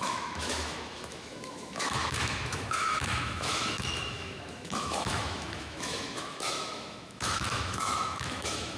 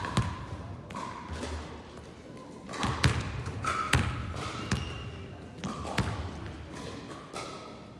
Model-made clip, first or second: first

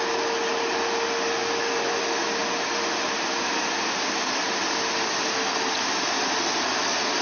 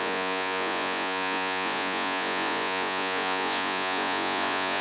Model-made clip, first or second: second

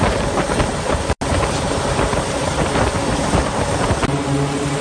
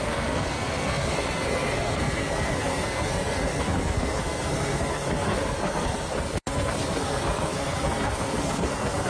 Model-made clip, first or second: second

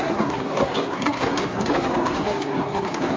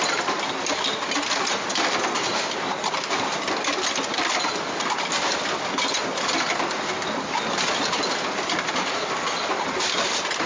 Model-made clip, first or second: first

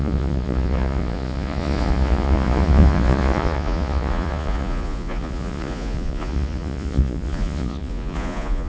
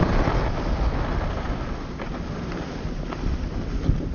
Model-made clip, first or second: first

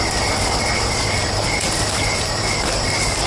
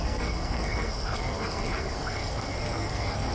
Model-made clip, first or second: second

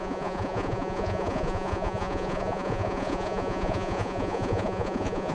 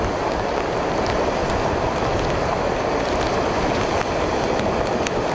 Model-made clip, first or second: first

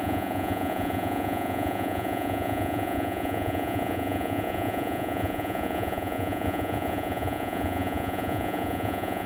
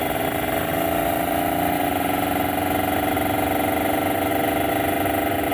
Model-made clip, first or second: first